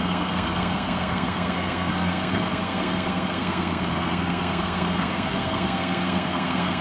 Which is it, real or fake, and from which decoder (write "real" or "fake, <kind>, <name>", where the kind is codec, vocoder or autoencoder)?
fake, codec, SNAC